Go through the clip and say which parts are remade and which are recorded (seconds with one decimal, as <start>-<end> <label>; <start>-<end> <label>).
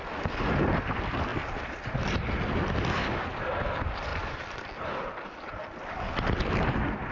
0.0-7.1 recorded